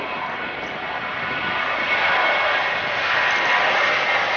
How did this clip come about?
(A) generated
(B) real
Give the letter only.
B